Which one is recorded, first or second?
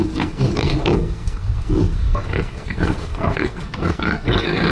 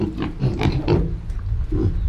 second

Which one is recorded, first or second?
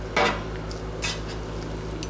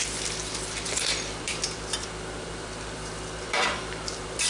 first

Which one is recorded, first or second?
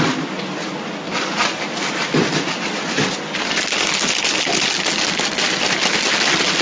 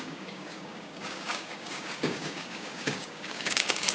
first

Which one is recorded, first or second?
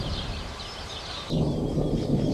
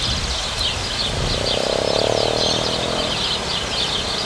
second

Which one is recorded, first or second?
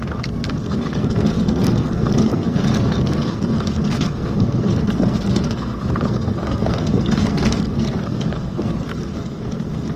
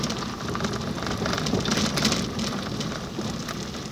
second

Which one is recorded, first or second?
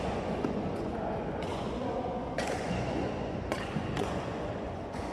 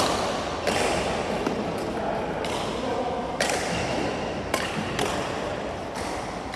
second